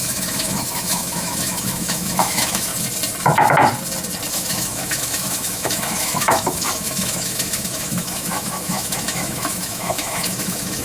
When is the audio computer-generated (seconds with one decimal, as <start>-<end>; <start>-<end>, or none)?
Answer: 0.0-2.7; 4.3-10.8